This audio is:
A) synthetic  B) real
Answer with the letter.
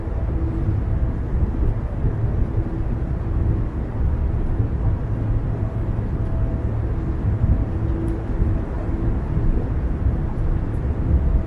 B